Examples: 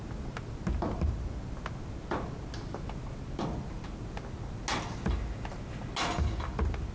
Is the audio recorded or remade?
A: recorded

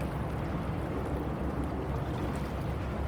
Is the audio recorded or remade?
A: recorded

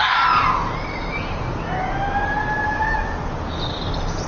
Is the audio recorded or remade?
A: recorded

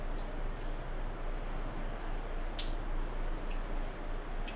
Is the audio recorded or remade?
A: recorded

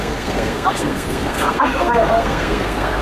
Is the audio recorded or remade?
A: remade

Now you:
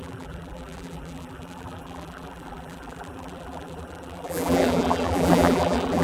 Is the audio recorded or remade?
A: remade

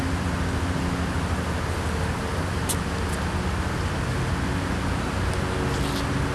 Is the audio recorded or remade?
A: recorded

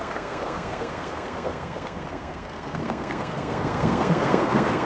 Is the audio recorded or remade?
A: remade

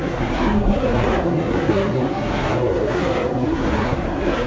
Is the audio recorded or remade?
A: remade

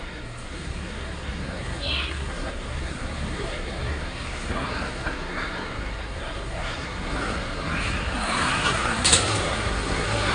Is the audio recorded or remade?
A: remade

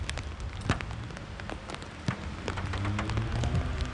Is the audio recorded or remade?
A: recorded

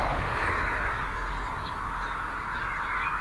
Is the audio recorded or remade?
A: remade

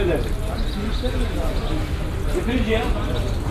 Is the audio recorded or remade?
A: recorded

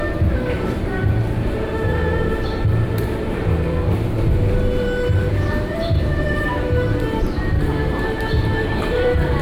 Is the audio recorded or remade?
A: remade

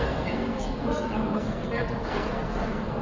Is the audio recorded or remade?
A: remade